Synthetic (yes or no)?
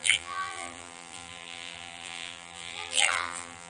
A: yes